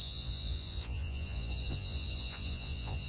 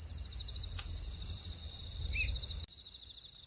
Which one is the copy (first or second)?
first